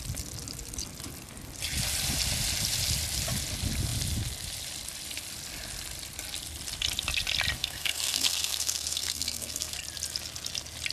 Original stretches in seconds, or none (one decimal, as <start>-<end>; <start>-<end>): 0.0-7.6; 9.8-10.9